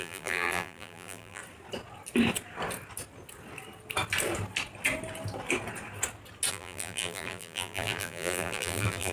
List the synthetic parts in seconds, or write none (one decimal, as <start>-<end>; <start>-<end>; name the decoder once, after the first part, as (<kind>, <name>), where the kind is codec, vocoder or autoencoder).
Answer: 0.0-1.4 (vocoder, BigVGAN v2); 6.5-9.1